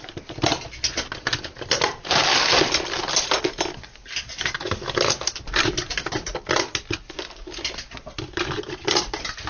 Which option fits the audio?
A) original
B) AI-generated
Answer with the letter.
A